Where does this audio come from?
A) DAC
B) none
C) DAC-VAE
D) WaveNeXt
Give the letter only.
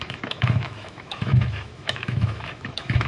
C